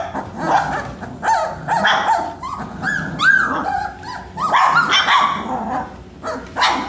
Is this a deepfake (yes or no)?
no